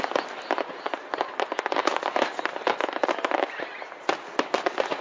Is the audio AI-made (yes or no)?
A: no